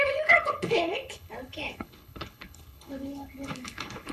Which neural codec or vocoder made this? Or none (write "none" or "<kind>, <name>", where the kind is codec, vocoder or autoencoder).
codec, HILCodec